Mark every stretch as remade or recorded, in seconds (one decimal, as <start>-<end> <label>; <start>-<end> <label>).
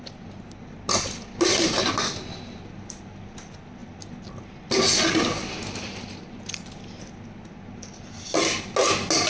0.0-9.3 recorded